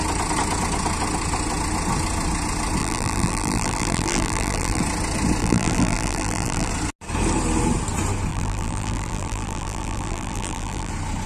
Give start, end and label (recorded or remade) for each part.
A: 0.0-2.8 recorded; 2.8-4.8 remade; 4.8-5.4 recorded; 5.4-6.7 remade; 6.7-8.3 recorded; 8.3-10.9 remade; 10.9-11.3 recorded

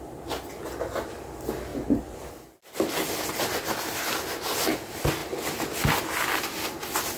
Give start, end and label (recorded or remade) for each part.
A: 0.0-1.7 recorded; 1.7-2.3 remade; 2.3-7.2 recorded

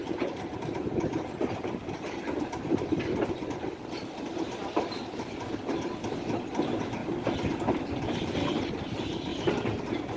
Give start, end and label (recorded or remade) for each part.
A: 0.0-10.2 recorded

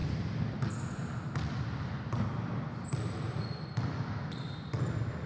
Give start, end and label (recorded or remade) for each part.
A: 0.0-5.3 recorded

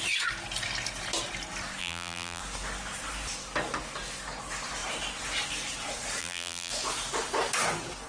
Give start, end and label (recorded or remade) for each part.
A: 0.0-1.8 recorded; 1.8-2.4 remade; 2.4-6.2 recorded; 6.2-6.7 remade; 6.7-8.1 recorded

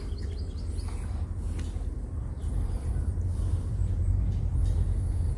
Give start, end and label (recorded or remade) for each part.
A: 0.0-2.4 recorded; 2.4-4.5 remade; 4.5-5.4 recorded

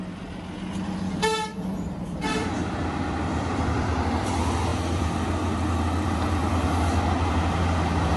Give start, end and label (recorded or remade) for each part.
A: 0.0-1.5 recorded; 1.5-4.3 remade; 4.3-4.7 recorded; 4.7-6.5 remade; 6.5-8.2 recorded